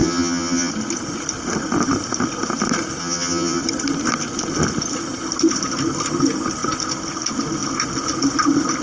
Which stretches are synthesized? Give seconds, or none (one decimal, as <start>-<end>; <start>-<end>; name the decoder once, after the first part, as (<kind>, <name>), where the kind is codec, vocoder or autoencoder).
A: 0.0-0.7 (vocoder, HiFi-GAN); 3.0-3.6